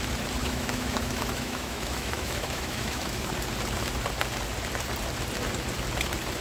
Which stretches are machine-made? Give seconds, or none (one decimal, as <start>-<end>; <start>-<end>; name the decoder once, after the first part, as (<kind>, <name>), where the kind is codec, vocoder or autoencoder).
0.4-3.3 (autoencoder, DAC-VAE)